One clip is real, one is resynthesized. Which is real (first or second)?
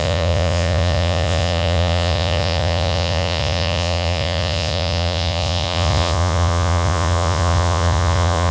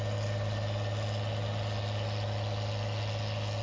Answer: second